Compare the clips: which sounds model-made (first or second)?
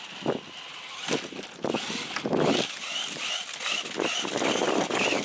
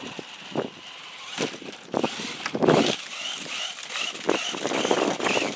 second